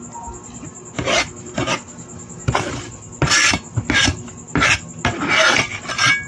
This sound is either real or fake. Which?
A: real